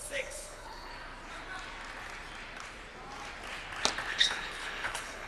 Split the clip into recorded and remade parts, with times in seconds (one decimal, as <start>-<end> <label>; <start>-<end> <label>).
0.0-0.9 remade; 0.9-4.1 recorded; 4.1-5.3 remade